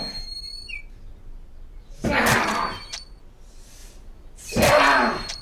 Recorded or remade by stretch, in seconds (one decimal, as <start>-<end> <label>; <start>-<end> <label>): 0.0-5.4 recorded